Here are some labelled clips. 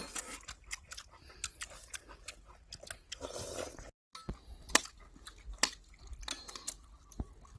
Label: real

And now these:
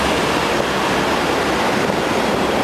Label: real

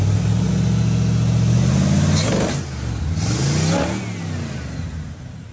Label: real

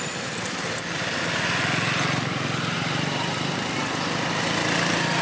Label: real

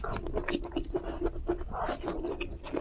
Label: real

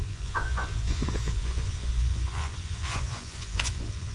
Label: fake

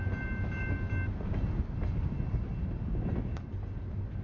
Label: real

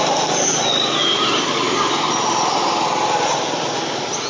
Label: real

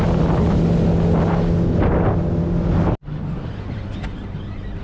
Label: real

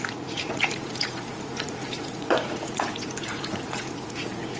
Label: fake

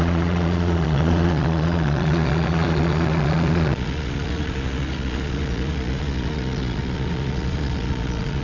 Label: fake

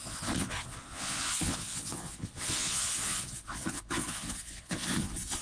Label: fake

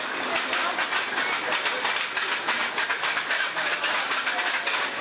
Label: real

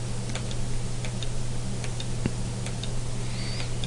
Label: real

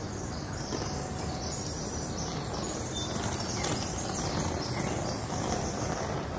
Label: real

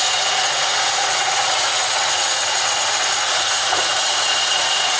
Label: fake